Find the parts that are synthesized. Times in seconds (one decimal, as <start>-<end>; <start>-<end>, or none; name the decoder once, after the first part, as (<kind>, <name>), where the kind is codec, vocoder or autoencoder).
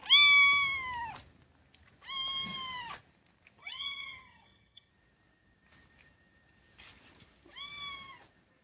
3.6-4.9 (vocoder, HiFi-GAN)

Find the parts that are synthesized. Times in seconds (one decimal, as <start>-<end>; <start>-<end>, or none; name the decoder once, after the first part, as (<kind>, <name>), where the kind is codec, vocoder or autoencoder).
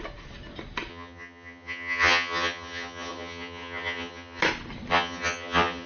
0.9-4.4 (vocoder, HiFi-GAN); 4.9-5.9